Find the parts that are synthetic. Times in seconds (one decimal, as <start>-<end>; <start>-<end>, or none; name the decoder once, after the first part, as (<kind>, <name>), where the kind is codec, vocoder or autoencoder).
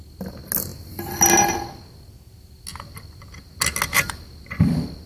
none